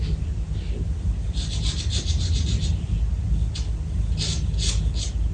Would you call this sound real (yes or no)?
yes